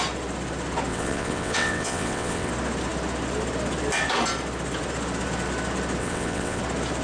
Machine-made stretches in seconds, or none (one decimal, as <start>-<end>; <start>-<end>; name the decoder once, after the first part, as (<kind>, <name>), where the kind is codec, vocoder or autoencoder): 0.9-2.5 (vocoder, WaveNeXt); 6.0-6.6